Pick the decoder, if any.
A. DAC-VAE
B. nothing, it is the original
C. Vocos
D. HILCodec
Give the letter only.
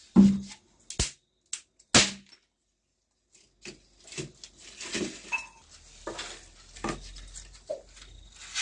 B